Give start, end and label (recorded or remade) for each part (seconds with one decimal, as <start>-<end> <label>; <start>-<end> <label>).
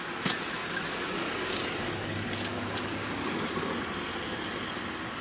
0.0-0.6 recorded; 0.6-3.7 remade; 3.7-5.2 recorded